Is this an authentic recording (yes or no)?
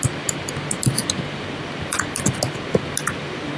yes